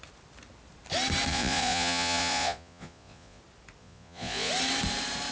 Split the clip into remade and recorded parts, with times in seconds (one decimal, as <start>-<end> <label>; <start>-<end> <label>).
0.0-1.3 recorded; 1.3-3.4 remade; 3.4-3.8 recorded; 3.8-4.5 remade; 4.5-5.3 recorded